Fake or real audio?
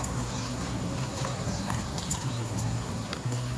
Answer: fake